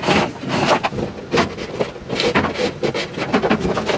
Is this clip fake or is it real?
real